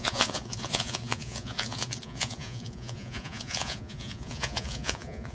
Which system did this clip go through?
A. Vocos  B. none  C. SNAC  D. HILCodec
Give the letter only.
A